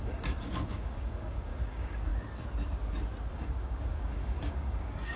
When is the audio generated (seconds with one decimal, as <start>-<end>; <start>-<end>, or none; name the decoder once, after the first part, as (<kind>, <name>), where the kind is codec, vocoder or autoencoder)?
0.0-2.1 (codec, DAC); 3.3-5.2